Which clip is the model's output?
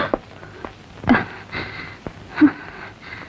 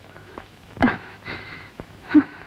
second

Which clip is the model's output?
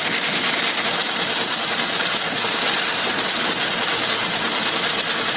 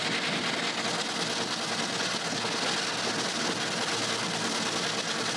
first